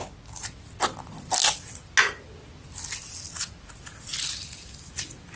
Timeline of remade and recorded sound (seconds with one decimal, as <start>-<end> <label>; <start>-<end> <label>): 0.0-5.4 recorded